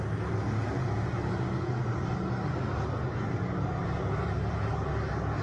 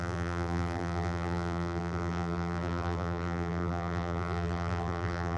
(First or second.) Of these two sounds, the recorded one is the first